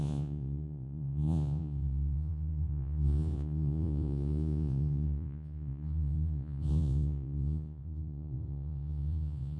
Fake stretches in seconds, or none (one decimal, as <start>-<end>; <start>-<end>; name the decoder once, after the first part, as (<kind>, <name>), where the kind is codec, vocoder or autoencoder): 0.0-9.6 (vocoder, Vocos)